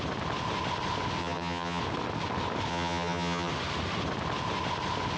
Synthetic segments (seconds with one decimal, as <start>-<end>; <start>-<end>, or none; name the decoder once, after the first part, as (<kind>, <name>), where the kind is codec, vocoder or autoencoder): 1.2-1.8 (vocoder, HiFi-GAN); 2.7-3.5